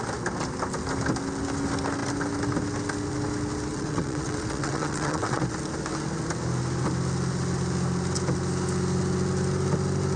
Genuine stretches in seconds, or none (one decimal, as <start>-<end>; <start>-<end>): 0.0-3.7; 5.4-10.2